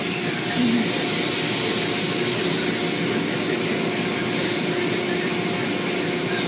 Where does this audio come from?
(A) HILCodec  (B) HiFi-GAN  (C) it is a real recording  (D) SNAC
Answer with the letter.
C